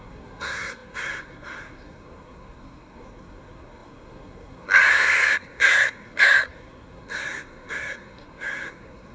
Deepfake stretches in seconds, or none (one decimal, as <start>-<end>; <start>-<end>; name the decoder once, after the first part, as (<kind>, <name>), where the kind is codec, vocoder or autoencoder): 0.0-9.1 (codec, SNAC)